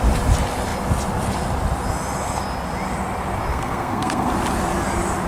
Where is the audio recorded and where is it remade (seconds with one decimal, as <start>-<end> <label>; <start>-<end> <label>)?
0.0-3.5 recorded; 3.5-4.3 remade; 4.3-5.3 recorded

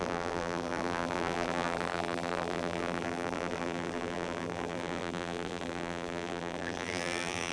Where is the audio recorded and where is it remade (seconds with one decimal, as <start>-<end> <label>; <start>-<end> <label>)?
0.0-7.5 remade